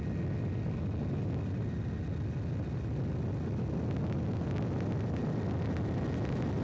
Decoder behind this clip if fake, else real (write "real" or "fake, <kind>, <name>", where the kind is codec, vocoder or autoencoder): real